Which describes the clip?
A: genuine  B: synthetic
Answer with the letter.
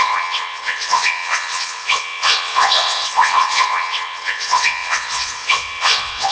B